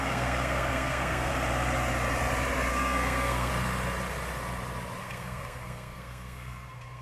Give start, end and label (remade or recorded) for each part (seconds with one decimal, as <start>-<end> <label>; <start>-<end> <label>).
0.0-1.3 remade; 1.3-2.7 recorded; 2.7-3.5 remade; 3.5-5.0 recorded; 5.0-7.0 remade